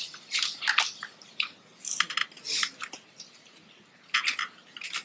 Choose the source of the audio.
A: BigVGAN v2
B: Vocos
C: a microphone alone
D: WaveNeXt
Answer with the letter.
C